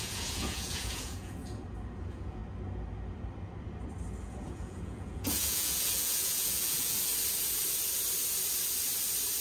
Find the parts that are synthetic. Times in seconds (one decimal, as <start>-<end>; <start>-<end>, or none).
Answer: 0.0-1.4; 2.0-2.4; 4.2-7.1